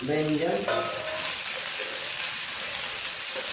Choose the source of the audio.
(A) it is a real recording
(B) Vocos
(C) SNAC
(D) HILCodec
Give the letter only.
A